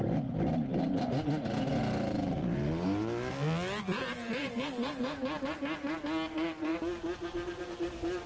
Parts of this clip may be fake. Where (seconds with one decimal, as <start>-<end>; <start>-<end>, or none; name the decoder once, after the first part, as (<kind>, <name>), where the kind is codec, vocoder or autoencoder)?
none